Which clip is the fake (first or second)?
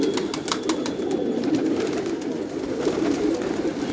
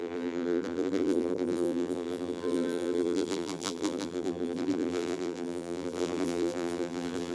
second